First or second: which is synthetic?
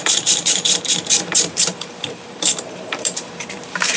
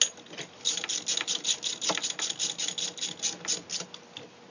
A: first